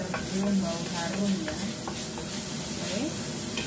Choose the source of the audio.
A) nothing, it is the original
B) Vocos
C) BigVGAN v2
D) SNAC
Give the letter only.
A